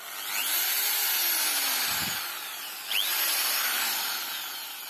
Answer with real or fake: real